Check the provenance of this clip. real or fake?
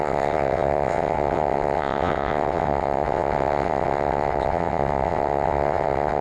fake